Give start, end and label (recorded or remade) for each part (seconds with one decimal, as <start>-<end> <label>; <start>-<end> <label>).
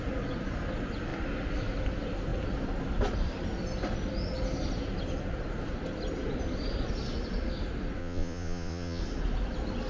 0.0-8.0 recorded; 8.0-9.0 remade; 9.0-9.9 recorded